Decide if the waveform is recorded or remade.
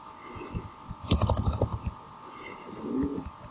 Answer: recorded